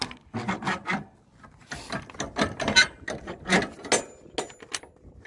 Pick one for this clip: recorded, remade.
recorded